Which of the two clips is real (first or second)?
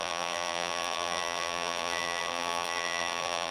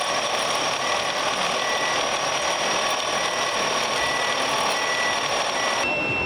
second